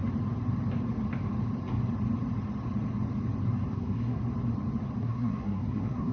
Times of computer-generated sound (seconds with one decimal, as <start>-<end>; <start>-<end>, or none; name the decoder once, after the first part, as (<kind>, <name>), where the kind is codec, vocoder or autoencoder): 3.7-4.2 (codec, SNAC); 5.0-6.1